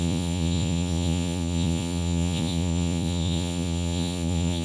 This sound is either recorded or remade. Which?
remade